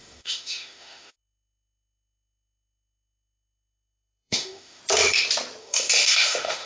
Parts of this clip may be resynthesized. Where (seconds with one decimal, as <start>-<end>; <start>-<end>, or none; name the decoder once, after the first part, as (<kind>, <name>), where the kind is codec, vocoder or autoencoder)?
0.0-4.8 (autoencoder, DAC-VAE); 5.6-6.7